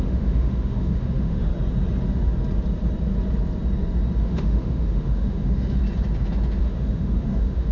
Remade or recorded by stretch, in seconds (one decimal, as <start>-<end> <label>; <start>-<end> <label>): 0.0-1.5 remade; 1.5-4.2 recorded; 4.2-5.8 remade; 5.8-6.6 recorded; 6.6-7.7 remade